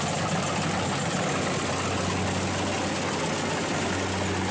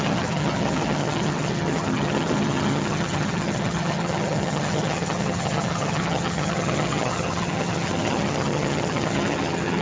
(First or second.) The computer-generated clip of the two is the second